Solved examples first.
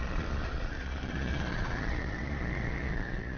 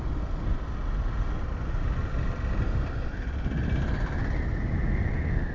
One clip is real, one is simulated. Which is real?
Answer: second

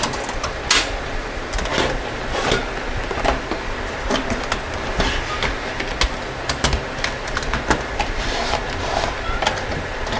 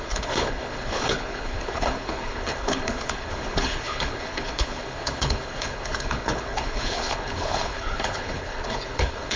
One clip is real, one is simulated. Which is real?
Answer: first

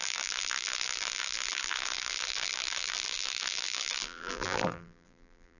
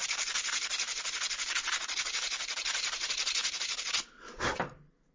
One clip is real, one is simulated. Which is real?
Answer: second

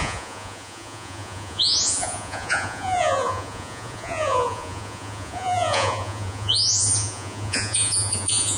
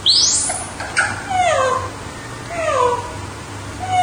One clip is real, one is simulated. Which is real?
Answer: second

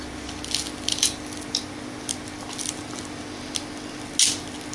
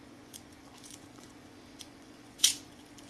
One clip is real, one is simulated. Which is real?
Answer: first